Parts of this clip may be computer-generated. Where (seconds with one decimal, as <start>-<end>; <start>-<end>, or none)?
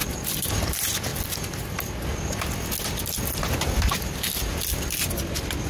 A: 0.0-0.5